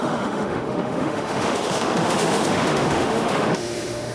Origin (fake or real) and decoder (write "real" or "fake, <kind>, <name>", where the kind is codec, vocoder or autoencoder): fake, autoencoder, DAC-VAE